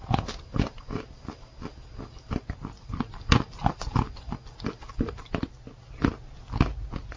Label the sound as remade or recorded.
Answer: recorded